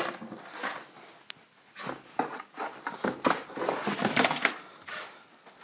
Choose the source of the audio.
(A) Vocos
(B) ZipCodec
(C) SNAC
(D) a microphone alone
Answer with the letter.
D